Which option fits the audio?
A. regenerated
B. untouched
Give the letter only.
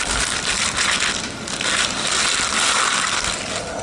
B